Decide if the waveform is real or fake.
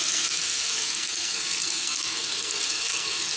fake